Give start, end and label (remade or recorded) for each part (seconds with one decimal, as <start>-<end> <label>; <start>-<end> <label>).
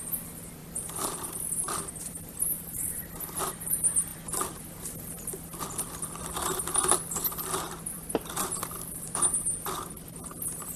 0.0-10.8 recorded